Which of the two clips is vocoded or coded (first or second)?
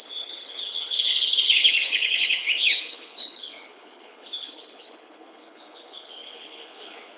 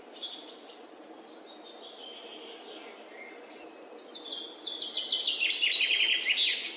first